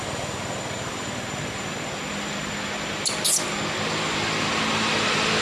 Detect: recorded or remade recorded